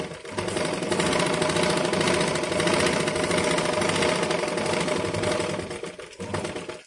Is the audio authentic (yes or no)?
yes